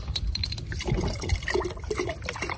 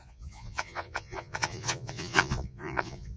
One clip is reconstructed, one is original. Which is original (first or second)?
first